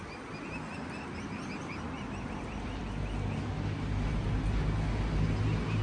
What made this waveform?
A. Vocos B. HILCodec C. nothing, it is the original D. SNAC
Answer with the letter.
C